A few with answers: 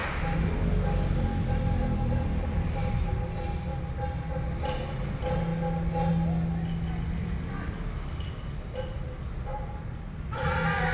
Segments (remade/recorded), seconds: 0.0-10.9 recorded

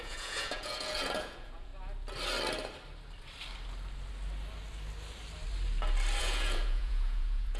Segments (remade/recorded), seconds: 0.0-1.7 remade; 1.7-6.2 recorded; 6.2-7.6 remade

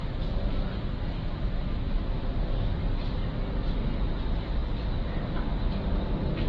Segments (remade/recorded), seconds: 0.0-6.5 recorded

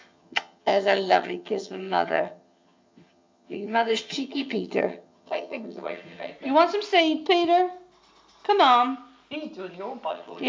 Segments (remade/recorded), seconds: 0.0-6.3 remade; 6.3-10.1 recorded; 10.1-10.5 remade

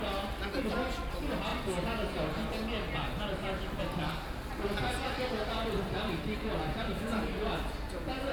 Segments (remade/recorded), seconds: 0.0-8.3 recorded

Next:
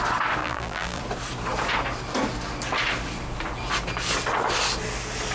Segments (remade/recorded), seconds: 0.0-0.4 recorded; 0.4-1.0 remade; 1.0-5.3 recorded

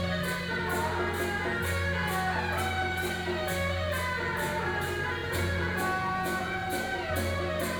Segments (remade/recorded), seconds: 0.0-5.2 recorded; 5.2-7.1 remade; 7.1-7.8 recorded

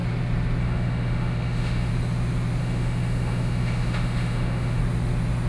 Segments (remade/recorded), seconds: 0.0-0.6 recorded; 0.6-1.9 remade; 1.9-2.6 recorded; 2.6-4.8 remade; 4.8-5.5 recorded